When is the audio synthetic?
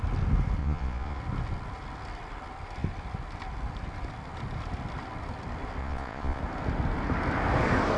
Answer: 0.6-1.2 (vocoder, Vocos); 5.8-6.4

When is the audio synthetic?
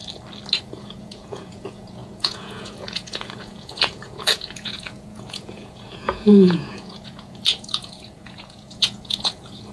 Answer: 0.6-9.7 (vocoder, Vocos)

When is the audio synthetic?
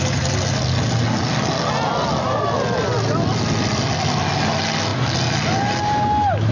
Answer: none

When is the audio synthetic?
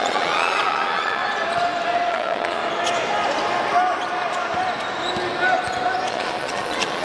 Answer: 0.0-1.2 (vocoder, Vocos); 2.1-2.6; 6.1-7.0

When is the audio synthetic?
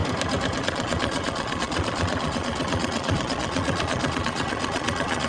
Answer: 0.6-5.3 (vocoder, Vocos)